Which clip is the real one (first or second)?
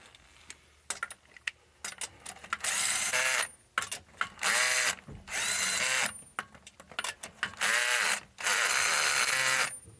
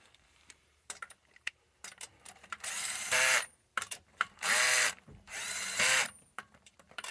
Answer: first